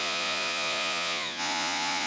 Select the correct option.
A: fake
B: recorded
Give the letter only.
A